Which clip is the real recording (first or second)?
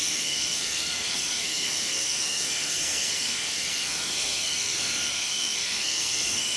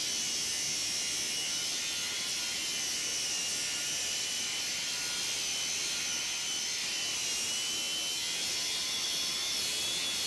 second